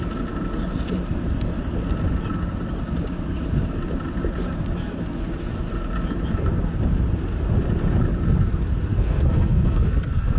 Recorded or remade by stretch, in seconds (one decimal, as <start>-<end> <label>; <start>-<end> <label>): 0.0-8.9 recorded; 8.9-10.4 remade